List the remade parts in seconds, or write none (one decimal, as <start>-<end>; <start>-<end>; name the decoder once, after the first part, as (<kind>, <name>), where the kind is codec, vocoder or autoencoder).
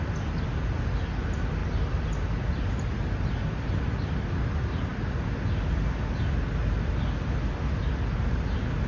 none